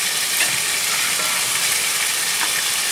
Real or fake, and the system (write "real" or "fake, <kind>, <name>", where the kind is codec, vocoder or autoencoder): real